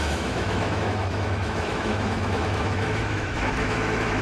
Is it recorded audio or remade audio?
remade